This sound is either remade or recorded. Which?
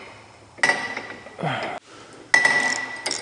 recorded